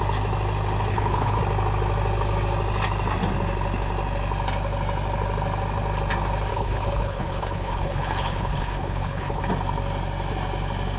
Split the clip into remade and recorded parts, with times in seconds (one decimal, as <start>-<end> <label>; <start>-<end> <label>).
0.0-0.9 recorded; 0.9-1.4 remade; 1.4-6.5 recorded; 6.5-9.4 remade; 9.4-11.0 recorded